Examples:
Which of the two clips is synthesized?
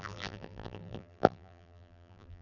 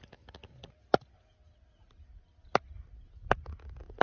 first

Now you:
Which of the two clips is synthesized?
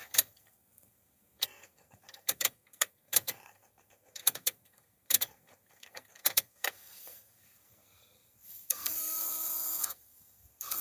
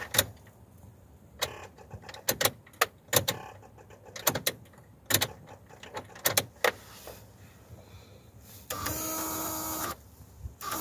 first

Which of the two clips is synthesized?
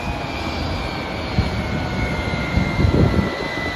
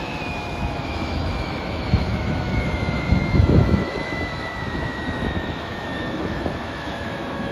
second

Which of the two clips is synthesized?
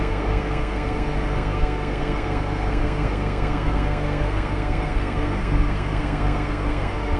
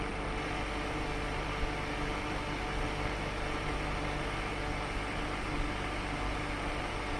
first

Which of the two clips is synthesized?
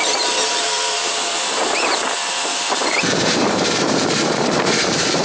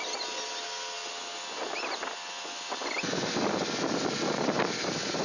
first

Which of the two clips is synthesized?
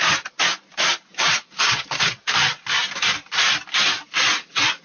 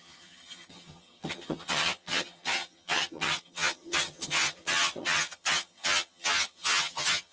second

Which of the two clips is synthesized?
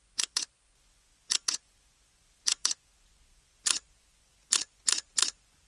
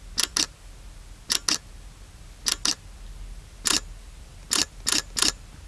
first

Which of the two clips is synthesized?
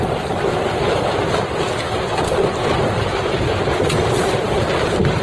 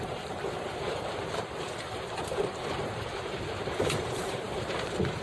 second